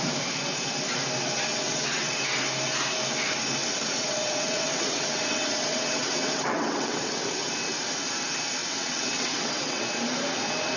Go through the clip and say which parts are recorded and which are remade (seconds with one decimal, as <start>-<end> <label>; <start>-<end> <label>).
0.0-1.5 recorded; 1.5-2.2 remade; 2.2-3.6 recorded; 3.6-7.5 remade; 7.5-8.6 recorded; 8.6-9.8 remade; 9.8-10.8 recorded